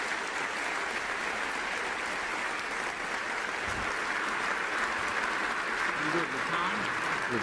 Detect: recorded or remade recorded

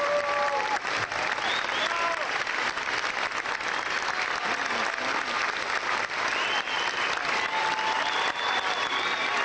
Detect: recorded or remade recorded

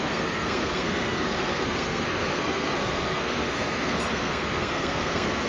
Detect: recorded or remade remade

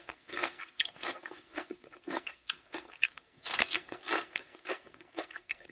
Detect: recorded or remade remade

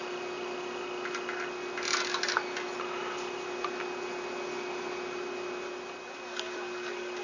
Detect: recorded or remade recorded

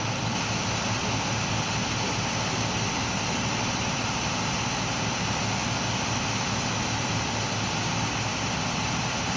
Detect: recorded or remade recorded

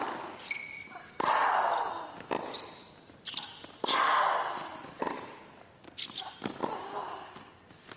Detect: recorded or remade recorded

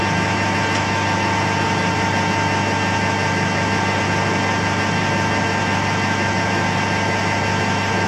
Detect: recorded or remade recorded